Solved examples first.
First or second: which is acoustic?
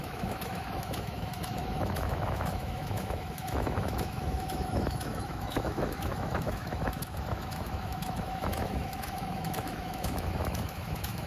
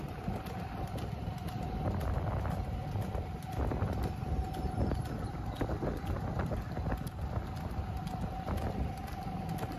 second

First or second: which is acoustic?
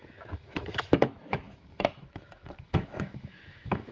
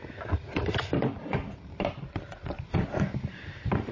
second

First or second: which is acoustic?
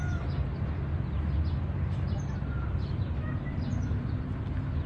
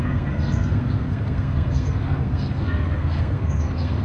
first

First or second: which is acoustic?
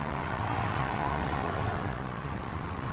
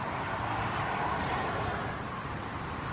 second